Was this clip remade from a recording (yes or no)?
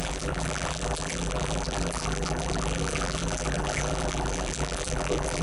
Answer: yes